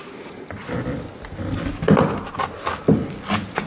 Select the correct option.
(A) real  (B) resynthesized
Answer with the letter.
A